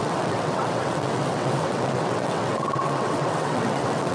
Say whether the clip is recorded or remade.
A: remade